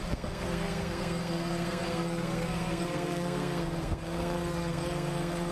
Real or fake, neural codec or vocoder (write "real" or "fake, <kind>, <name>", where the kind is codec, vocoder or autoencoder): fake, codec, SNAC